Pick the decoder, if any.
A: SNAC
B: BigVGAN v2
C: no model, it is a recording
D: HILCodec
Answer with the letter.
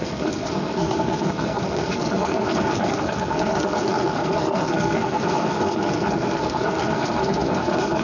A